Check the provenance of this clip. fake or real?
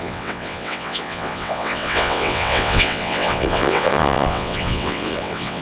fake